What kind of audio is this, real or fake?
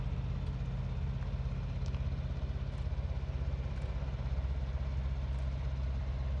real